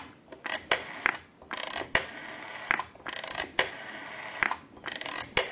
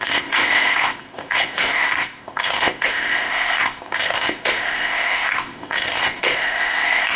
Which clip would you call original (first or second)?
first